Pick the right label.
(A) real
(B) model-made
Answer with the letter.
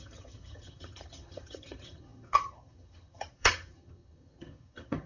B